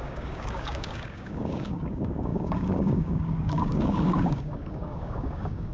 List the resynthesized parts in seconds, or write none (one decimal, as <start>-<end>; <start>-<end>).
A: 0.0-5.7